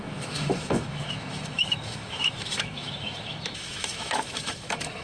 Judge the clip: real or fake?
fake